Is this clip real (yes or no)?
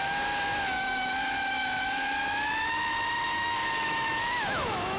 no